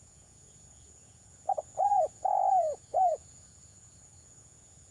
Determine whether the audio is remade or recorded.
remade